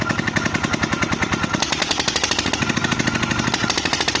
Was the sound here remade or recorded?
recorded